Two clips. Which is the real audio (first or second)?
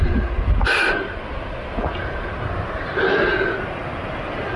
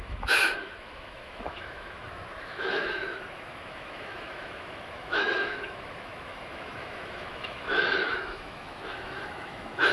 first